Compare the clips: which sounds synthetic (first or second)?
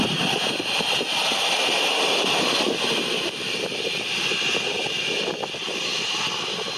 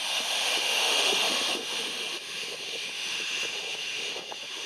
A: second